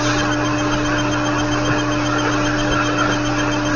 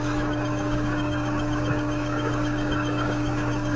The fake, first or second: second